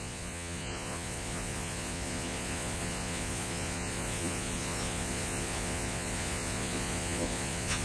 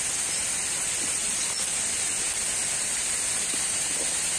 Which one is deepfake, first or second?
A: first